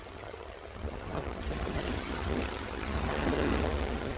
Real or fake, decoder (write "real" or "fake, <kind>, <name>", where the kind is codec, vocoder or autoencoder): fake, vocoder, HiFi-GAN